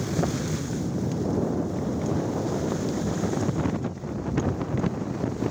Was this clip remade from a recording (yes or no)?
no